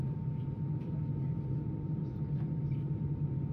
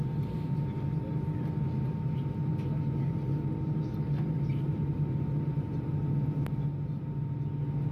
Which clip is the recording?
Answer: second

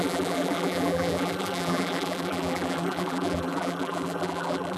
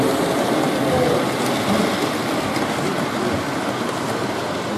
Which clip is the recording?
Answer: second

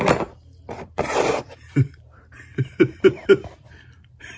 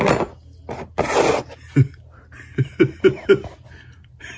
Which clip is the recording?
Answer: second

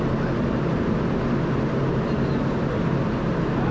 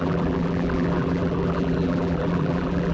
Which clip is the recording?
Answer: first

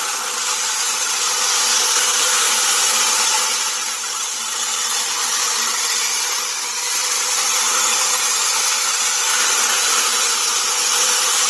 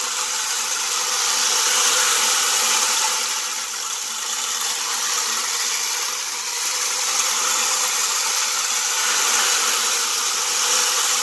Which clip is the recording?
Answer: first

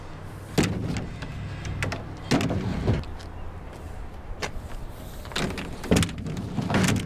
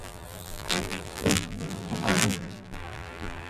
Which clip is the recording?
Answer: first